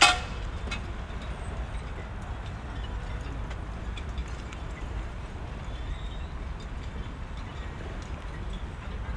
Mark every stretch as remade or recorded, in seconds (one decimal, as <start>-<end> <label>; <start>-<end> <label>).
0.0-4.2 recorded; 4.2-5.4 remade; 5.4-9.2 recorded